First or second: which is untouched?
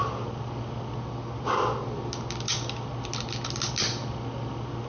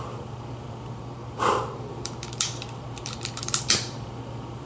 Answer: first